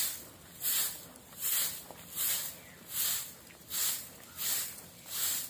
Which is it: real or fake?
real